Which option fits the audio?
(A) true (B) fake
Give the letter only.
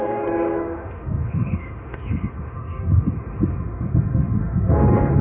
B